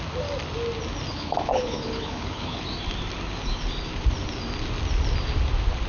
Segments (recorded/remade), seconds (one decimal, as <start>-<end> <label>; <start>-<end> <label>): 0.0-1.1 recorded; 1.1-2.6 remade; 2.6-5.9 recorded